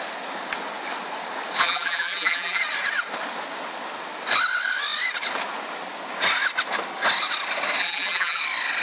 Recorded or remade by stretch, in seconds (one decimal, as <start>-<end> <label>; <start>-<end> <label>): 0.0-1.6 recorded; 1.6-2.6 remade; 2.6-7.8 recorded; 7.8-8.4 remade; 8.4-8.8 recorded